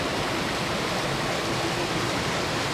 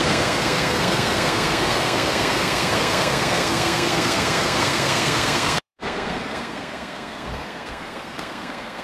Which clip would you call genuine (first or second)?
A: first